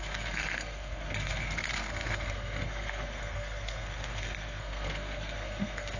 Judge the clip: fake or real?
fake